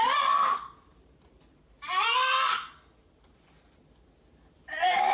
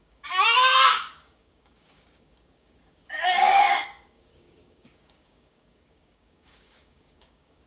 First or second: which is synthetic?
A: second